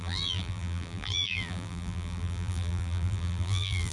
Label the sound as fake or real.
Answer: fake